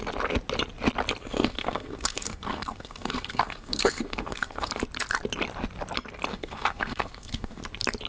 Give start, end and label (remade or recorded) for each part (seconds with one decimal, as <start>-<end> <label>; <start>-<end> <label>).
0.0-1.2 recorded; 1.2-4.7 remade; 4.7-6.3 recorded; 6.3-7.6 remade; 7.6-8.1 recorded